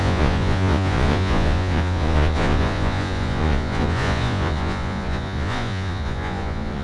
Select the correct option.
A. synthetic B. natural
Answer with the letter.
A